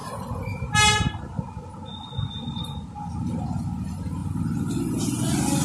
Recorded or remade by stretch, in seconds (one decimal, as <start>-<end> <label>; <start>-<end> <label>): 0.0-5.6 recorded